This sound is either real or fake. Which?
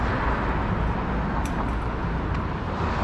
real